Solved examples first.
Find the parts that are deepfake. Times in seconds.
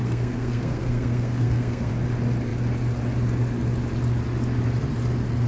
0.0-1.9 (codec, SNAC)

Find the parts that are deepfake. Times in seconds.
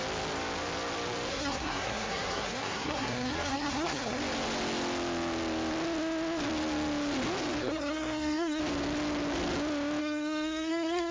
1.3-4.2 (codec, SNAC); 7.6-8.6; 10.0-11.1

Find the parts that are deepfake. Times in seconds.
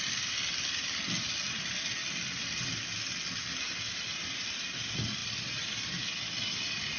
none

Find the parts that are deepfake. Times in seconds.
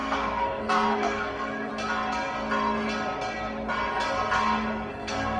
0.0-1.7 (codec, SNAC); 4.9-5.4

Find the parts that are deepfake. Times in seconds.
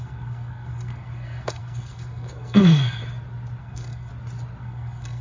0.0-3.0 (codec, SNAC); 3.6-4.1; 4.6-5.2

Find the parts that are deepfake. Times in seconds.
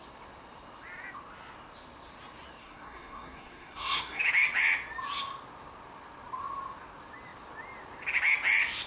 2.6-4.2 (codec, SNAC)